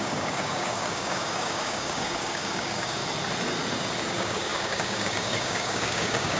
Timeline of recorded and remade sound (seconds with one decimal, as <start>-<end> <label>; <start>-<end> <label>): 0.0-3.0 remade; 3.0-4.1 recorded; 4.1-6.4 remade